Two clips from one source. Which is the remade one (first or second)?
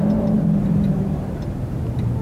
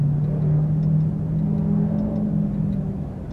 first